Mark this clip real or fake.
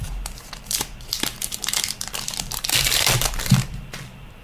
fake